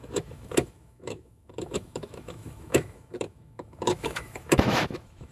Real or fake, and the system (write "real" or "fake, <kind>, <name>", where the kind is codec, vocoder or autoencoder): fake, autoencoder, DAC-VAE